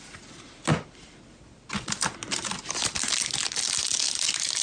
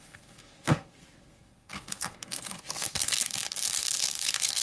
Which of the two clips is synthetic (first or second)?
second